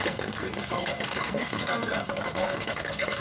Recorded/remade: remade